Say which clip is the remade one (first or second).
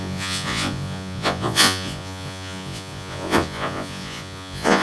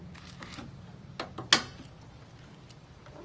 first